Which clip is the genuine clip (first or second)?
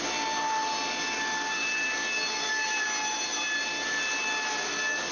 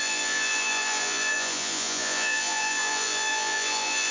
first